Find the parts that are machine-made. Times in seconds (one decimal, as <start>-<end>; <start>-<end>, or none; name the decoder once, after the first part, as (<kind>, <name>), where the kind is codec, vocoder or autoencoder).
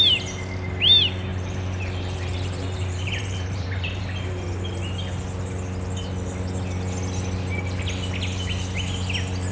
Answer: 1.3-4.0 (vocoder, BigVGAN v2)